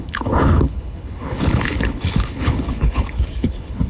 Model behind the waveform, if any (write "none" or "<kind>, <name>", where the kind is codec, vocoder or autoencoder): codec, HILCodec